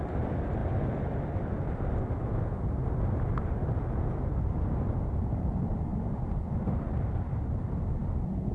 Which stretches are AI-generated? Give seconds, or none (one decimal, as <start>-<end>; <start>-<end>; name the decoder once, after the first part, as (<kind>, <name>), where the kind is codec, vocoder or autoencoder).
none